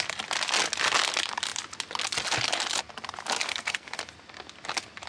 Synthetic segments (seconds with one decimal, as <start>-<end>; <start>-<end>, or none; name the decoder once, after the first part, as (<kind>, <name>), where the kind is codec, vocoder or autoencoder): 3.5-4.0 (codec, SNAC)